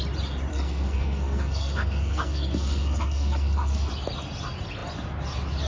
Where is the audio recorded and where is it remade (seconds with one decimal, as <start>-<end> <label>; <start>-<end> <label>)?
0.0-0.5 recorded; 0.5-3.9 remade; 3.9-5.7 recorded